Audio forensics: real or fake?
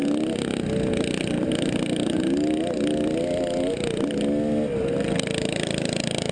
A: real